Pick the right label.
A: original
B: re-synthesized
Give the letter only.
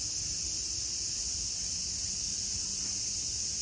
A